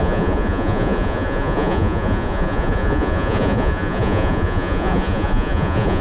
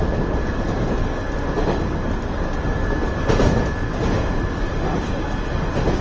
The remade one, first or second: first